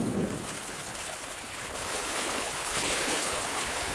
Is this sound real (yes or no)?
no